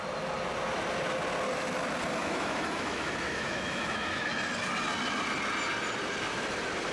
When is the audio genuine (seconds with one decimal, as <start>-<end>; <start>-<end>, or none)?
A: 0.0-2.2; 4.3-6.9